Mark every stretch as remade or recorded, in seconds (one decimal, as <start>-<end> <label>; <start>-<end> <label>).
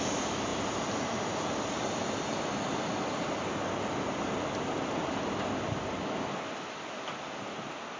0.0-8.0 recorded